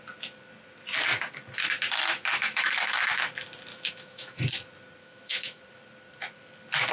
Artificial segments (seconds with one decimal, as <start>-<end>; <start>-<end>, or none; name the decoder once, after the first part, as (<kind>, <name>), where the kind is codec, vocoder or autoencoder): 2.3-3.1 (autoencoder, DAC-VAE); 3.7-4.4; 5.0-5.6